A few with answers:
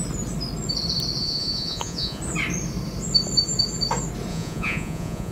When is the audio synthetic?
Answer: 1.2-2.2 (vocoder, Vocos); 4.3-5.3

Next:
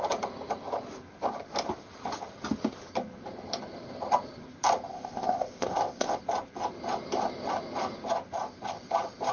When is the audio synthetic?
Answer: 4.9-6.2 (codec, ZipCodec)

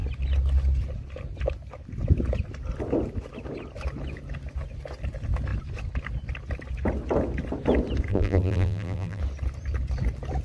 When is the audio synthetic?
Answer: 8.1-9.2 (vocoder, BigVGAN v2)

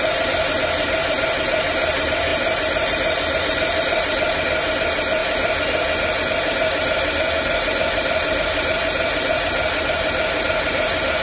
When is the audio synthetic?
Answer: 0.0-5.2 (vocoder, BigVGAN v2); 6.2-11.2